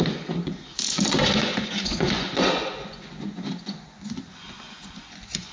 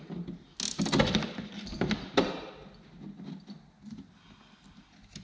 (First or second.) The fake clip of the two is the first